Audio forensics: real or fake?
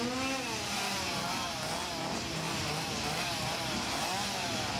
real